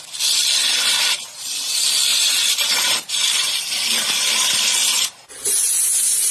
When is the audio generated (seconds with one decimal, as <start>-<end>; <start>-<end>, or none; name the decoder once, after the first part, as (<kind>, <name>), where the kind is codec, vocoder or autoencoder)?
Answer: 0.7-1.7 (vocoder, BigVGAN v2); 2.1-3.7